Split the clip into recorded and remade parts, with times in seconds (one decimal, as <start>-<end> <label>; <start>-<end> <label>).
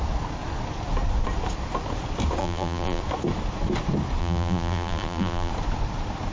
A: 0.0-2.4 recorded; 2.4-3.0 remade; 3.0-4.2 recorded; 4.2-5.5 remade; 5.5-6.3 recorded